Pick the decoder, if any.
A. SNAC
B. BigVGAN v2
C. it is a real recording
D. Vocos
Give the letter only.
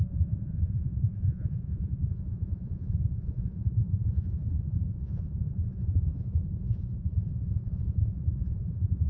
D